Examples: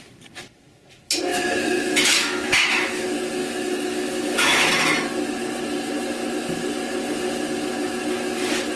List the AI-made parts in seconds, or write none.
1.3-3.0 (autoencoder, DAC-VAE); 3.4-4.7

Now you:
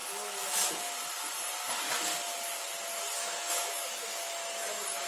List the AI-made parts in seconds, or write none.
3.2-5.1 (autoencoder, DAC-VAE)

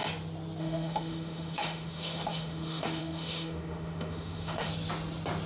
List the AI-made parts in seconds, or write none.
0.6-4.7 (autoencoder, DAC-VAE)